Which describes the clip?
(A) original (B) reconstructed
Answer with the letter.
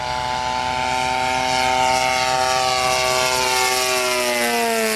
A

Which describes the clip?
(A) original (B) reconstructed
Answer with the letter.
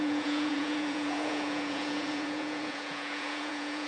B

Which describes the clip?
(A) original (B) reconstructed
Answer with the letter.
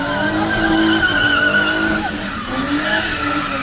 A